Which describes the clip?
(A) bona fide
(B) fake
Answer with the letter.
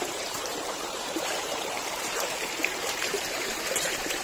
B